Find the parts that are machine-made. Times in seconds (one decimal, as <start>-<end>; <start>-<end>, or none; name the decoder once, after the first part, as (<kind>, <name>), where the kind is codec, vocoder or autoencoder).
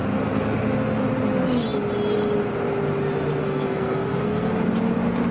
3.4-4.5 (codec, SNAC)